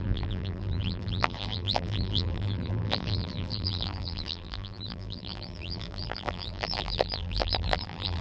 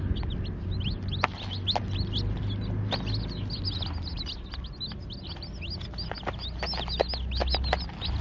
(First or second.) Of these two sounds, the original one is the second